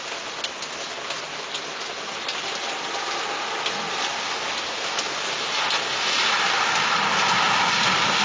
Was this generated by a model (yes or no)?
no